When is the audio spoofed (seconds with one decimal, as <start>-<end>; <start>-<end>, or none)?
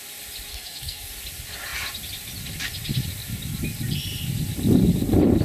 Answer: 0.5-1.1